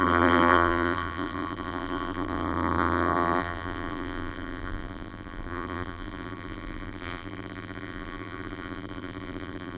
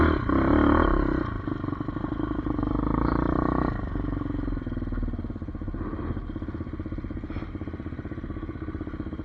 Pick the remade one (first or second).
first